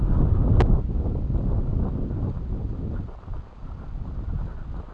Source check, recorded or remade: recorded